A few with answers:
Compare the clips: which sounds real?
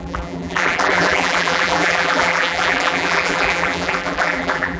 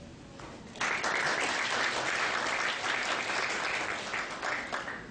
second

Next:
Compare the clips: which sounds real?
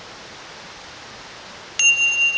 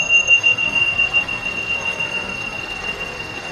first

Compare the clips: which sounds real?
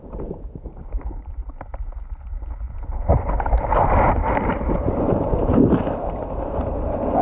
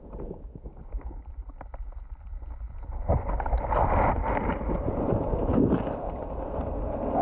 second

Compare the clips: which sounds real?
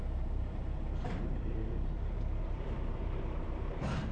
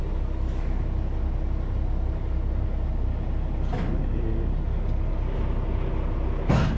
second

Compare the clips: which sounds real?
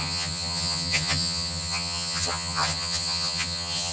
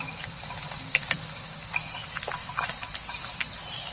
second